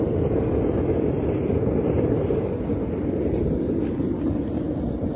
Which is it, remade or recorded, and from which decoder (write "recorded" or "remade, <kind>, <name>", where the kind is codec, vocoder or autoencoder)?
recorded